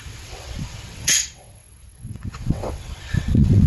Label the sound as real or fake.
fake